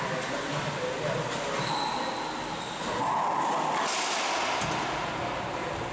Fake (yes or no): no